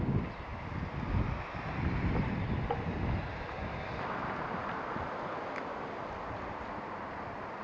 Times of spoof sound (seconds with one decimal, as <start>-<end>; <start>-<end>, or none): none